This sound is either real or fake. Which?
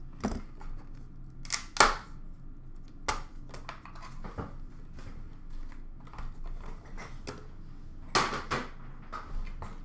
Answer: real